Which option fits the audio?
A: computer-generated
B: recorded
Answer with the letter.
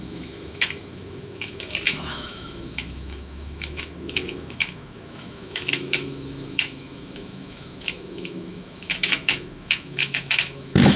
A